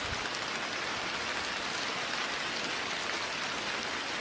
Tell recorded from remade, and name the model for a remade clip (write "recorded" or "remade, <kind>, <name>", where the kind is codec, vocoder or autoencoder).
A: recorded